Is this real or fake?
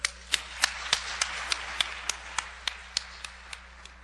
real